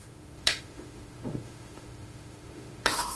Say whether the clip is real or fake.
fake